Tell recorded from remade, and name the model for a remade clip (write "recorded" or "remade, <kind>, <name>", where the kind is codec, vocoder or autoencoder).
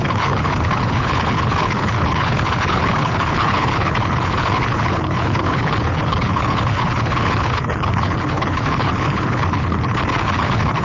remade, codec, HILCodec